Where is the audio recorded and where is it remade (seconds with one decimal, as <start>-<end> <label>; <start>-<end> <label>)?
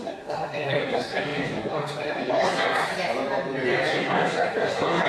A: 0.0-2.9 remade; 2.9-3.9 recorded; 3.9-5.1 remade